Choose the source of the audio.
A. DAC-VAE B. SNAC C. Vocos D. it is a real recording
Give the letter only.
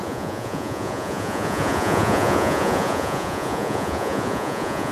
C